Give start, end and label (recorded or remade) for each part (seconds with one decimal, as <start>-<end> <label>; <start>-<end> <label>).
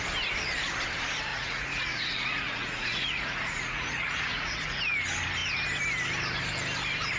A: 0.0-1.3 recorded; 1.3-4.8 remade; 4.8-7.2 recorded